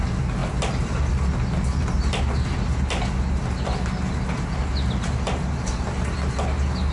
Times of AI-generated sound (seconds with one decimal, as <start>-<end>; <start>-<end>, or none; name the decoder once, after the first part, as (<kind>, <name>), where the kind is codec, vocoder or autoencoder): none